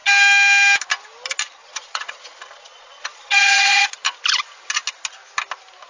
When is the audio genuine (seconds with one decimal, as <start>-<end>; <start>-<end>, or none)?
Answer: 0.0-1.6; 3.9-5.9